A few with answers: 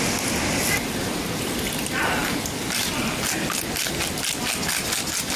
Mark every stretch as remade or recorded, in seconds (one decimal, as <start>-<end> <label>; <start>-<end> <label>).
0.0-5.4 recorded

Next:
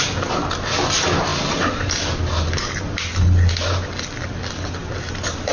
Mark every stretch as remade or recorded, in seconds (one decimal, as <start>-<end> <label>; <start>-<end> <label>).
0.0-5.5 recorded

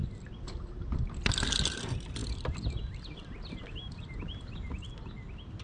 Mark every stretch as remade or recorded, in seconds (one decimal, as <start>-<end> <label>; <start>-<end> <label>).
0.0-0.5 remade; 0.5-2.2 recorded; 2.2-5.6 remade

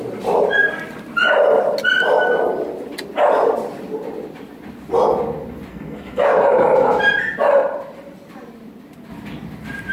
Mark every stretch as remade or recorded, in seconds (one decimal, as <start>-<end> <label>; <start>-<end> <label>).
0.0-5.7 recorded; 5.7-6.2 remade; 6.2-9.9 recorded

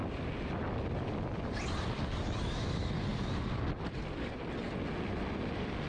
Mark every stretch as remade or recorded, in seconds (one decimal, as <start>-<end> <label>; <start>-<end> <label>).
0.0-5.9 recorded